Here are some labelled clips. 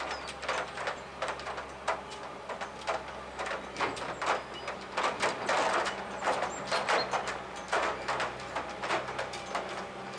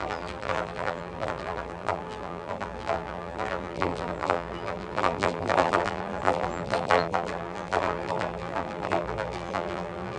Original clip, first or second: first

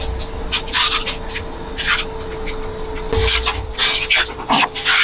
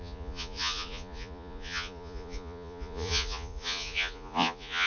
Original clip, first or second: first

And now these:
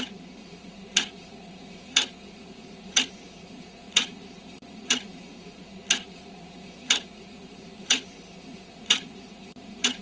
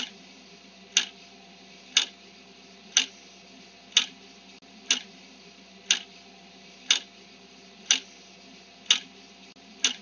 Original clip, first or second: second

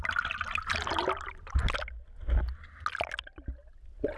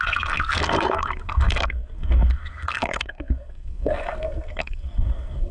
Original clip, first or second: first